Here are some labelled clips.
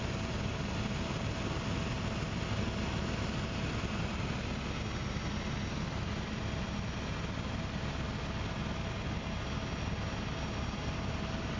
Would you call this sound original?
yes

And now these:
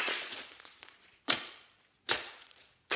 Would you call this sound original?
no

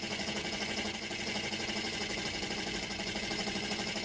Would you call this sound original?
no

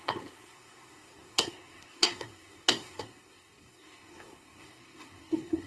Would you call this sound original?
no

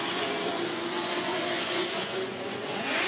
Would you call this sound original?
no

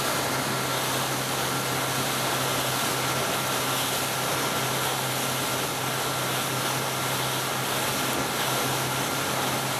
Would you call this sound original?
yes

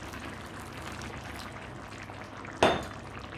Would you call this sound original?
yes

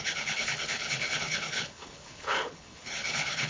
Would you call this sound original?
no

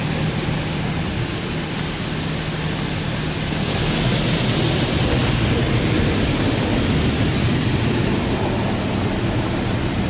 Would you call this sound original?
yes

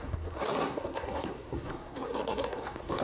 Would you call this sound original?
no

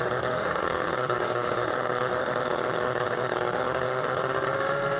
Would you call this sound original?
no